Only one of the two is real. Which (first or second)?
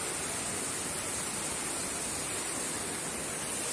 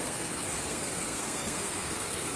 first